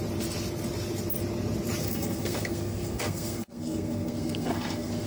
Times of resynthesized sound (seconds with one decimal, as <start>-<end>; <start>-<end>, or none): 1.8-5.1